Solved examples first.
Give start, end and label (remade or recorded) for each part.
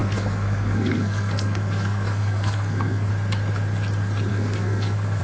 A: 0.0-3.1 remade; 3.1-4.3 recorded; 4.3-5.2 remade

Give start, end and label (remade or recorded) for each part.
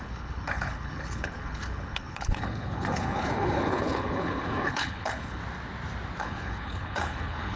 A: 0.0-5.4 remade; 5.4-6.2 recorded; 6.2-7.6 remade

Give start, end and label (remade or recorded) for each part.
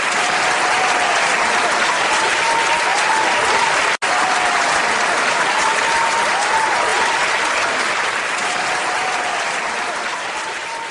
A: 0.0-10.9 recorded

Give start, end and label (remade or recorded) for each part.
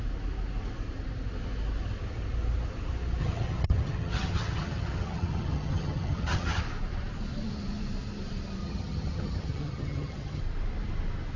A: 0.0-3.2 recorded; 3.2-6.6 remade; 6.6-8.6 recorded; 8.6-10.4 remade; 10.4-11.4 recorded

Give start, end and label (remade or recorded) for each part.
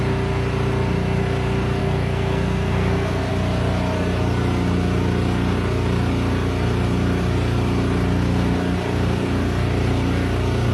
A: 0.0-1.8 recorded; 1.8-3.3 remade; 3.3-10.7 recorded